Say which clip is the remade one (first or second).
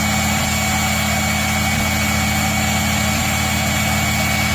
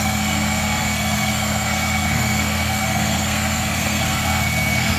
second